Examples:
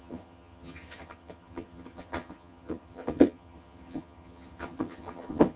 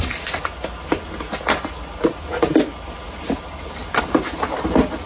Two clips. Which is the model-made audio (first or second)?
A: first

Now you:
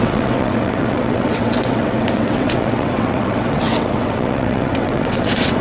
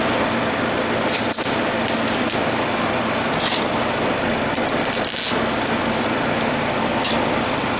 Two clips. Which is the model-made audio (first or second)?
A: first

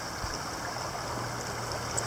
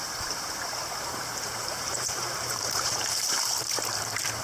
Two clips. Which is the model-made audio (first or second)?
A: second